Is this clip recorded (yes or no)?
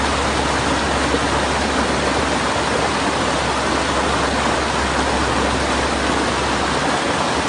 yes